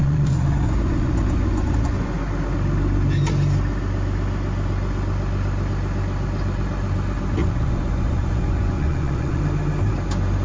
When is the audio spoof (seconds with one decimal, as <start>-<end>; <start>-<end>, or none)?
0.0-2.3; 7.4-9.4